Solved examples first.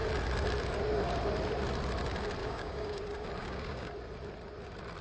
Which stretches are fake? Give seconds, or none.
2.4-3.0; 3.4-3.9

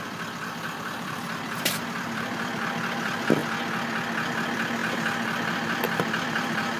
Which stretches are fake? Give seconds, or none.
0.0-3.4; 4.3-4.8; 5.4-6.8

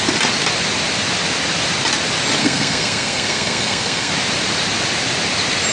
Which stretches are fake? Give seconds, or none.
2.4-4.1

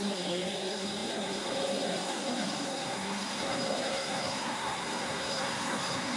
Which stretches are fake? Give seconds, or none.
0.0-6.2